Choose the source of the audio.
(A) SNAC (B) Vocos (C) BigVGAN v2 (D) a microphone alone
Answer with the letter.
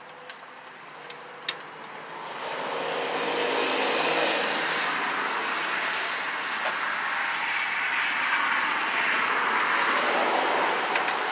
D